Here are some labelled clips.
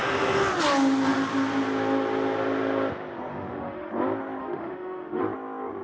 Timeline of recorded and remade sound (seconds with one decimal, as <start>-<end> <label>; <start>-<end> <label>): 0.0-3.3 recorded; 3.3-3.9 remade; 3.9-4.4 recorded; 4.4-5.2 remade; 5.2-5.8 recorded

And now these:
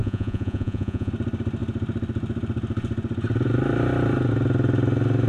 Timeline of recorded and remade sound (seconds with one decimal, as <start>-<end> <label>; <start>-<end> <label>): 0.0-1.1 remade; 1.1-5.3 recorded

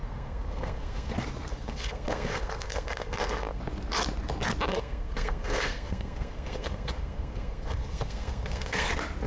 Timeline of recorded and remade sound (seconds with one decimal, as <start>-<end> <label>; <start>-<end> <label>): 0.0-1.1 remade; 1.1-1.5 recorded; 1.5-3.6 remade; 3.6-4.7 recorded; 4.7-8.9 remade; 8.9-9.3 recorded

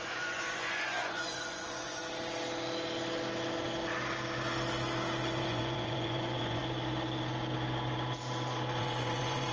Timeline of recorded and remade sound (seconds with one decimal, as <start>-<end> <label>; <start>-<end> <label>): 0.0-2.0 remade; 2.0-5.4 recorded; 5.4-6.6 remade; 6.6-8.8 recorded; 8.8-9.5 remade

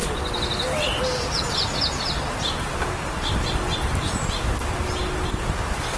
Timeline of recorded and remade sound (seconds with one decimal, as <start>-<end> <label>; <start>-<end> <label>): 0.0-6.0 recorded